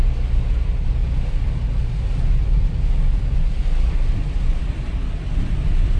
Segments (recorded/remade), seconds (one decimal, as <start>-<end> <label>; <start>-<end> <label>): 0.0-6.0 recorded